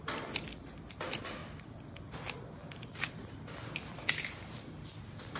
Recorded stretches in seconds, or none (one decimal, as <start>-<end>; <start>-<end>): 0.0-5.4